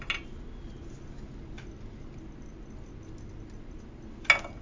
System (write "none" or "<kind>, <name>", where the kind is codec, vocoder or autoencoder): none